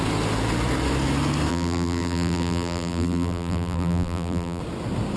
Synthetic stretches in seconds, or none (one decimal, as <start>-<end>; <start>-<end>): 1.5-4.6